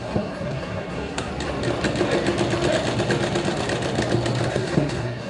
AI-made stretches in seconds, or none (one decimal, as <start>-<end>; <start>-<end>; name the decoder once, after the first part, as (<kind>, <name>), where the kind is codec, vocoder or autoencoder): 0.0-1.3 (codec, SNAC); 4.5-5.3